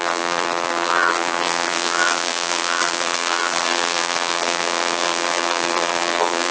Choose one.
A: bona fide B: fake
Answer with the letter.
B